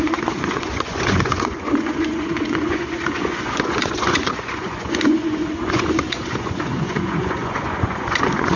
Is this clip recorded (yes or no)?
no